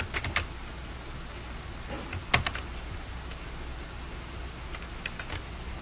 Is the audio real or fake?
real